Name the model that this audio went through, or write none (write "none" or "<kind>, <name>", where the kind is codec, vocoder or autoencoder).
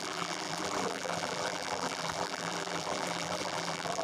vocoder, BigVGAN v2